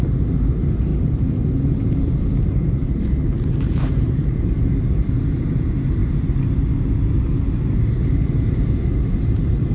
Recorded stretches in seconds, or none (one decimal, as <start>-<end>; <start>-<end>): 6.0-7.6